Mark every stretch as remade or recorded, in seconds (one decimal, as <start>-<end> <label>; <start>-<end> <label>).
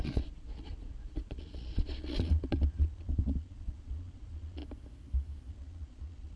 0.0-4.6 remade; 4.6-5.5 recorded; 5.5-6.4 remade